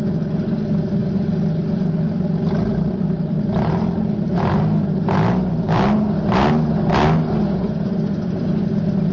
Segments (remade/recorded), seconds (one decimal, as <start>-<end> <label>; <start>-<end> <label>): 0.0-9.1 recorded